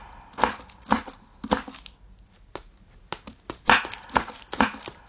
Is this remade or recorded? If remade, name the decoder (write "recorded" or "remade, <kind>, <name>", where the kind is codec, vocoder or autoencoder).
recorded